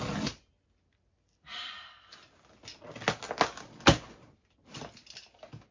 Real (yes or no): yes